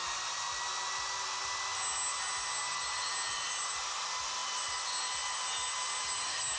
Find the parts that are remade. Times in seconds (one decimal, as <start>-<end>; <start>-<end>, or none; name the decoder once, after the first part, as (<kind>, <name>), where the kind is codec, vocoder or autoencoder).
none